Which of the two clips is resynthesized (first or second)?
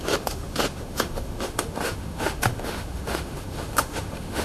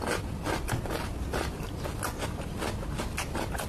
first